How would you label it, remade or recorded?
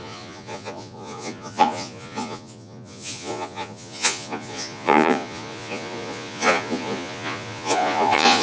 remade